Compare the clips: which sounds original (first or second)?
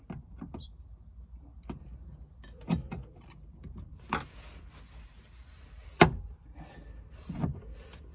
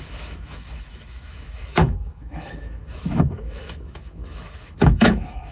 first